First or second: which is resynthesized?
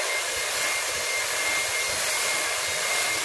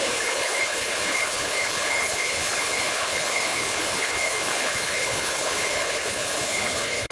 second